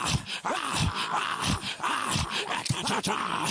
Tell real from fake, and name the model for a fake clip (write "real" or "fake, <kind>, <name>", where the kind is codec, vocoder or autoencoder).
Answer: real